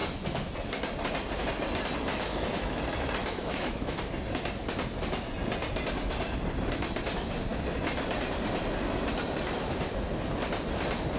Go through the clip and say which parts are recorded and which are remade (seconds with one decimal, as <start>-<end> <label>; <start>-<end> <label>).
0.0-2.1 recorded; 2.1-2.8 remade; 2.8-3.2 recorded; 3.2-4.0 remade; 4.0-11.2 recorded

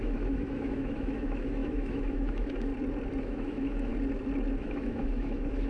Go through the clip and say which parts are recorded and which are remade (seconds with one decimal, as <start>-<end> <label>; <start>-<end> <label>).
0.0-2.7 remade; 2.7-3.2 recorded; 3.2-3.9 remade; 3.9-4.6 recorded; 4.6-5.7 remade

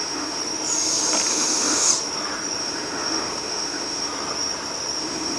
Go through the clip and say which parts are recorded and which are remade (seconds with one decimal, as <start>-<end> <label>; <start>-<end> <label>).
0.0-0.4 remade; 0.4-1.3 recorded; 1.3-1.9 remade; 1.9-2.6 recorded; 2.6-4.1 remade; 4.1-5.0 recorded; 5.0-5.4 remade